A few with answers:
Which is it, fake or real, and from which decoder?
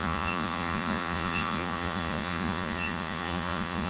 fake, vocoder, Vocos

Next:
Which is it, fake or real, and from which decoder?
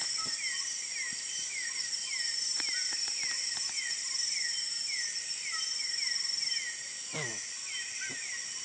real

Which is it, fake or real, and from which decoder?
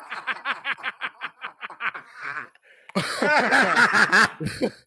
fake, vocoder, Vocos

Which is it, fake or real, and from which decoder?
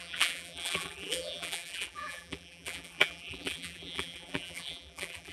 fake, vocoder, BigVGAN v2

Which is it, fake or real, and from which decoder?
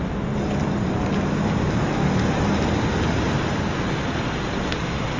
real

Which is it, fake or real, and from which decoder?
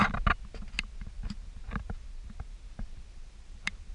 real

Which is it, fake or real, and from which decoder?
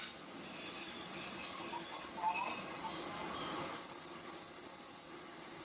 real